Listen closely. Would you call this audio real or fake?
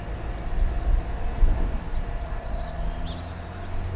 real